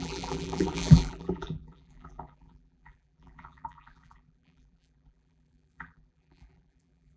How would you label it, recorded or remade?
remade